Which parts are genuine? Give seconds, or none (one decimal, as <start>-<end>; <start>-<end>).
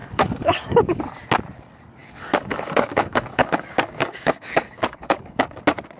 1.0-2.0; 5.6-6.0